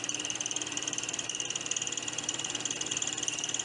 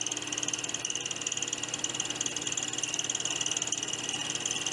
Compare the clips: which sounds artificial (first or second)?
first